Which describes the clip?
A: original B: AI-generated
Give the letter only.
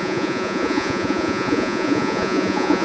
B